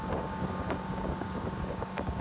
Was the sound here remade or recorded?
remade